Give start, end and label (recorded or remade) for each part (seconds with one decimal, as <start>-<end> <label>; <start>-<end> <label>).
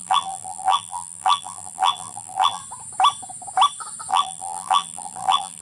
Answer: 0.0-2.6 remade; 2.6-4.1 recorded; 4.1-5.6 remade